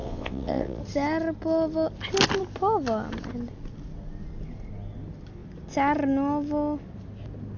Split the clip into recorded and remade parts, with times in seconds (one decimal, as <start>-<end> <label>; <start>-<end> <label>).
0.0-0.8 remade; 0.8-7.6 recorded